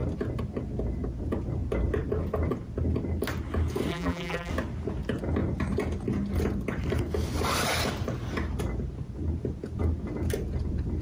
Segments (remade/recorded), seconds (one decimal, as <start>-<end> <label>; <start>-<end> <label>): 0.0-3.9 recorded; 3.9-4.5 remade; 4.5-11.0 recorded